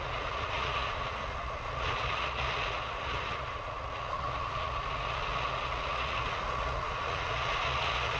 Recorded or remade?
remade